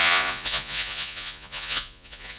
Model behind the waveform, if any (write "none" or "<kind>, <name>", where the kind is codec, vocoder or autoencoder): vocoder, Vocos